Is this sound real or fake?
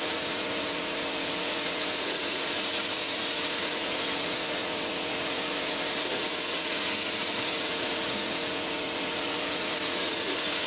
fake